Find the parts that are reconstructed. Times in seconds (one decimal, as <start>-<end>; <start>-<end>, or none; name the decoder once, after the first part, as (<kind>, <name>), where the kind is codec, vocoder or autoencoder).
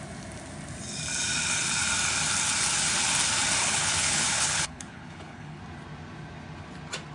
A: 3.6-5.6 (codec, HILCodec)